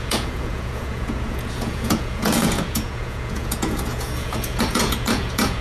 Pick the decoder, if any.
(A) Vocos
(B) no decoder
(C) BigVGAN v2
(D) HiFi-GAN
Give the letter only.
A